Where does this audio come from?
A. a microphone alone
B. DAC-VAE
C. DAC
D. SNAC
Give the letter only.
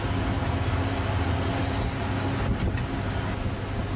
A